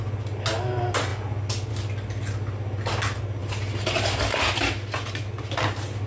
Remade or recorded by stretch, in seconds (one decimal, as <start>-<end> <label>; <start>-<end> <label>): 0.0-6.1 recorded